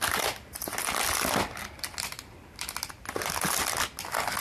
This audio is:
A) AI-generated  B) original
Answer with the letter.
B